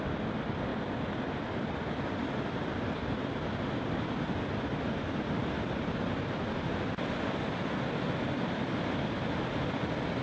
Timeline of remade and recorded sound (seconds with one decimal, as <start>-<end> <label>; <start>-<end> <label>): 0.0-10.2 recorded